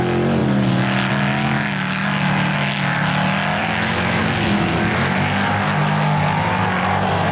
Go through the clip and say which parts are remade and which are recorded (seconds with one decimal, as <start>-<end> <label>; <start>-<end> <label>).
0.0-3.6 recorded; 3.6-4.2 remade; 4.2-7.3 recorded